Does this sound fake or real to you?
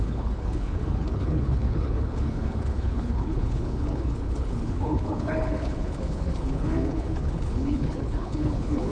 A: fake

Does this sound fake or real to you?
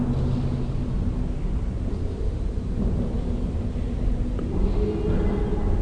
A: real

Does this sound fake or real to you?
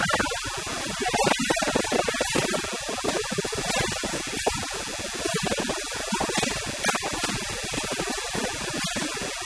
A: real